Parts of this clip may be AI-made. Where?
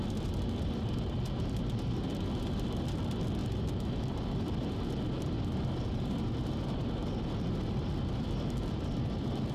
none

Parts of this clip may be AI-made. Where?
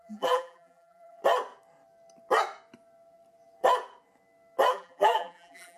0.0-1.2 (vocoder, BigVGAN v2); 4.7-5.8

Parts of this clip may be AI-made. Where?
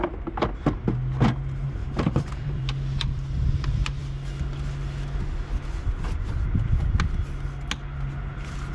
1.8-2.7 (vocoder, BigVGAN v2)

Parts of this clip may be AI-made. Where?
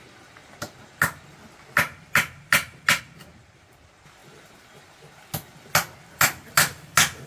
none